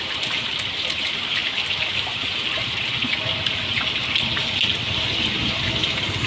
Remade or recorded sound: recorded